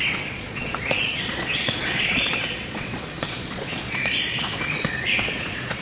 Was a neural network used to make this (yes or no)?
yes